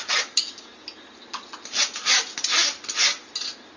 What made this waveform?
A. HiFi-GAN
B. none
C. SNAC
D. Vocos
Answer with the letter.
B